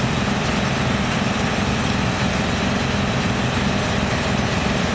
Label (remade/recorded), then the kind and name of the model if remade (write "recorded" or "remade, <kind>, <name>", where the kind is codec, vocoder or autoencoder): recorded